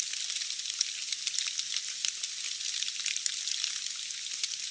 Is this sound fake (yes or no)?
no